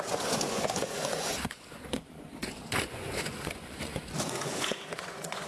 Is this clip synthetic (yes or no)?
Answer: yes